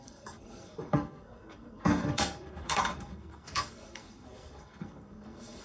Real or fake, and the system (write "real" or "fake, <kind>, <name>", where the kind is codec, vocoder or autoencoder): fake, codec, SNAC